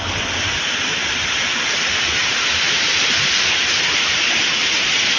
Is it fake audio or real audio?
real